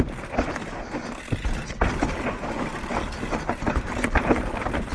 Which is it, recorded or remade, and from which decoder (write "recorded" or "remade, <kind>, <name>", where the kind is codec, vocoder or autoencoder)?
recorded